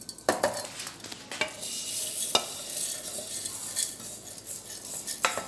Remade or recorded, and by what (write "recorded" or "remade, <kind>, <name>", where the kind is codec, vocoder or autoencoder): recorded